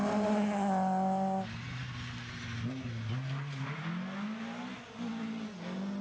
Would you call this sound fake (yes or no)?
no